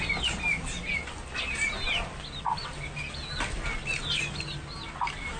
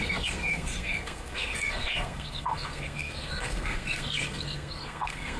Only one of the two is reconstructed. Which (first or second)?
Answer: second